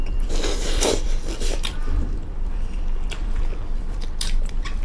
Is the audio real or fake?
fake